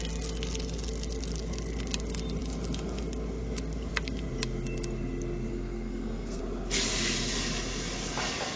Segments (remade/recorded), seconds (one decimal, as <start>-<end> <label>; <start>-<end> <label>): 0.0-5.5 recorded; 5.5-6.4 remade; 6.4-8.6 recorded